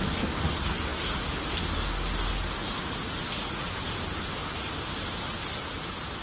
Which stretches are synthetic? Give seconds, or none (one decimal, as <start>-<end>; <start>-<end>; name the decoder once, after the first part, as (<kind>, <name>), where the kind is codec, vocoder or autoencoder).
2.6-3.7 (vocoder, Vocos)